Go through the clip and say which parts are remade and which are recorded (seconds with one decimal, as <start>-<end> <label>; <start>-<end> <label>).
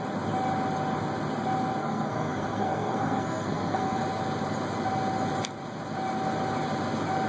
0.0-1.8 recorded; 1.8-4.0 remade; 4.0-7.3 recorded